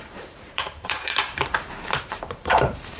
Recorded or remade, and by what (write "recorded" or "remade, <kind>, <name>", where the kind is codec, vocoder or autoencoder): remade, vocoder, BigVGAN v2